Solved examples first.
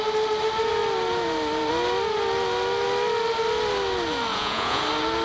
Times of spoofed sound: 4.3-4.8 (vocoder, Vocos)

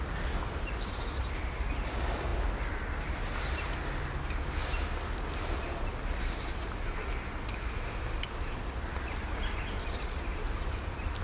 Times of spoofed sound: none